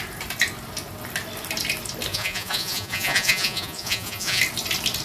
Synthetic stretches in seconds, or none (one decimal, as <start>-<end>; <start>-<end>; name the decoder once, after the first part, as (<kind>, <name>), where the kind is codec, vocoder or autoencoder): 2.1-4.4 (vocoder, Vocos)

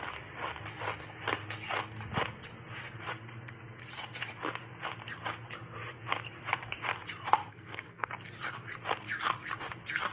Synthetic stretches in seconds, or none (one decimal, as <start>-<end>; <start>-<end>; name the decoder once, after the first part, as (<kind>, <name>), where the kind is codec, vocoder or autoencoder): 7.5-8.1 (codec, SNAC)

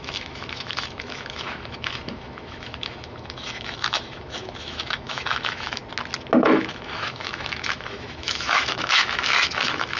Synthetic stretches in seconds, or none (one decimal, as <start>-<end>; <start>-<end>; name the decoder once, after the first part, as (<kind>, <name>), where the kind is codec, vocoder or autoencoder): 0.0-5.8 (autoencoder, DAC-VAE); 6.4-10.0

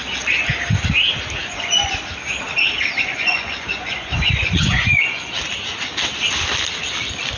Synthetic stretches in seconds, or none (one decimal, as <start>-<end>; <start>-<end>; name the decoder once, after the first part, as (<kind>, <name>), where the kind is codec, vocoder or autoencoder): 1.4-1.9 (vocoder, Vocos); 3.1-5.3